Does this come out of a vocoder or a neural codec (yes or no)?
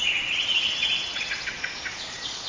yes